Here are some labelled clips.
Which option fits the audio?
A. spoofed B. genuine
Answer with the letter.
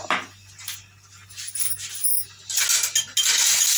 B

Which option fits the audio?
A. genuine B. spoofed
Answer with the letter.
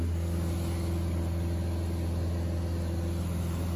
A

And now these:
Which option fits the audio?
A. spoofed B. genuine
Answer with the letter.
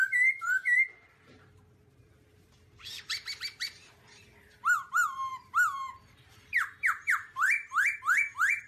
A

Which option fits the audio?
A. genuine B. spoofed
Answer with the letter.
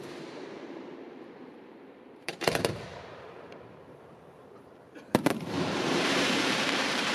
B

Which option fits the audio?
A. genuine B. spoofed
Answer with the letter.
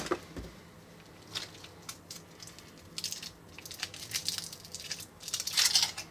A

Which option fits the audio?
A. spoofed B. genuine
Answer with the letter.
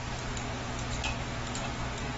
B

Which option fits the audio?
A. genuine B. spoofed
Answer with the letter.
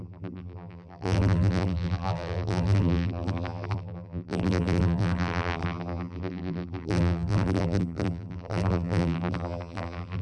B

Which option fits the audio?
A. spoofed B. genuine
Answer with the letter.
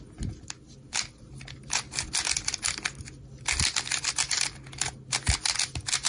B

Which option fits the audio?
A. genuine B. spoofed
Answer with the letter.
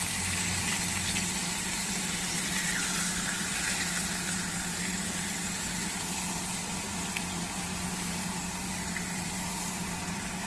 A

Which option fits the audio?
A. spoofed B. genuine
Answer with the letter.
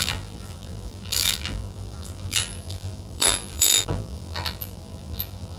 A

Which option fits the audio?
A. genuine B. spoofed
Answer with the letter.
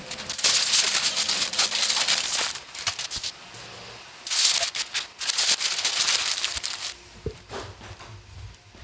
A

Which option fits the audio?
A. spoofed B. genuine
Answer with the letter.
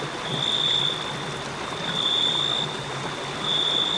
B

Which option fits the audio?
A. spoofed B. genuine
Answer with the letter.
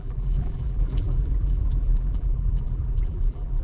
A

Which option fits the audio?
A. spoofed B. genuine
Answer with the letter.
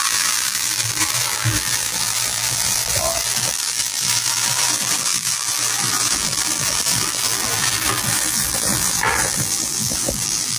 A